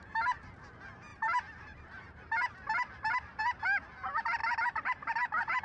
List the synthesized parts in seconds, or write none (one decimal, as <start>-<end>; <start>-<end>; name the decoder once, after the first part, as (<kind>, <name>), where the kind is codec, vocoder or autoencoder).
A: 1.1-3.4 (vocoder, BigVGAN v2); 4.4-5.6